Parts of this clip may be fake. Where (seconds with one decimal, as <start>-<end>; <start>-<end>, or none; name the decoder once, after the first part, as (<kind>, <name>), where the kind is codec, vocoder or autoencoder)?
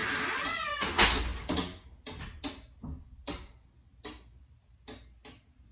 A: none